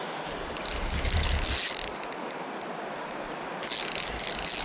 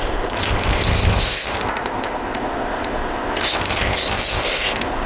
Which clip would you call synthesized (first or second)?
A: second